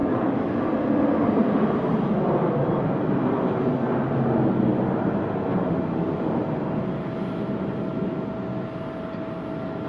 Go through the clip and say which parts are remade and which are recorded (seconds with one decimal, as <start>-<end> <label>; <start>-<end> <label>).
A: 0.0-0.6 remade; 0.6-9.9 recorded